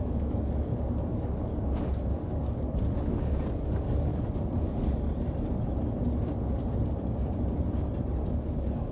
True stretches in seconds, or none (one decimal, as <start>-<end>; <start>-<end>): 1.5-2.1; 4.1-8.3